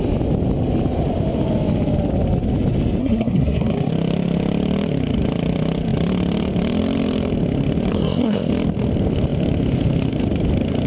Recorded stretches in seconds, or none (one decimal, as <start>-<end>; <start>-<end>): 0.0-3.0; 3.9-7.9; 8.5-10.9